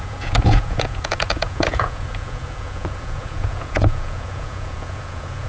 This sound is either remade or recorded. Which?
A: remade